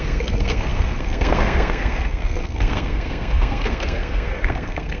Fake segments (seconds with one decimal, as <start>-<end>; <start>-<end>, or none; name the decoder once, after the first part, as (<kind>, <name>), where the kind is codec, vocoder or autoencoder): 0.0-5.0 (codec, SNAC)